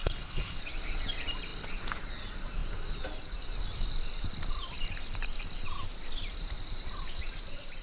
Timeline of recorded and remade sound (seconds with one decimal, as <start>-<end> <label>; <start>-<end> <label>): 0.0-0.6 remade; 0.6-7.8 recorded